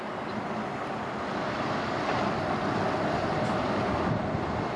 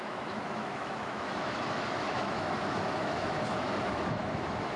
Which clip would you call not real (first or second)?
second